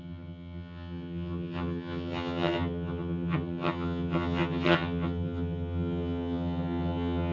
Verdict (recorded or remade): remade